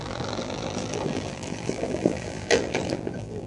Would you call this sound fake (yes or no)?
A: yes